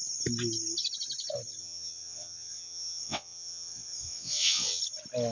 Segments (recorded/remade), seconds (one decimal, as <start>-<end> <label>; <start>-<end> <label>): 0.0-1.6 recorded; 1.6-4.8 remade; 4.8-5.3 recorded